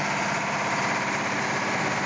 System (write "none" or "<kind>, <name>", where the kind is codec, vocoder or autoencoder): none